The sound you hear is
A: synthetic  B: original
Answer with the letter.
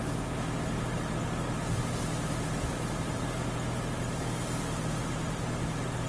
B